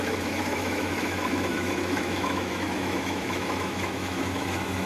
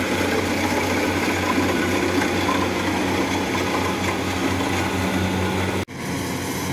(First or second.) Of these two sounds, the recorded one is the second